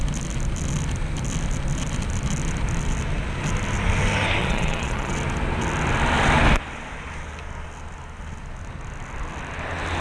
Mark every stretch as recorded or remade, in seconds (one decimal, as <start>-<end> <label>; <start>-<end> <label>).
0.0-4.4 recorded; 4.4-5.1 remade; 5.1-10.0 recorded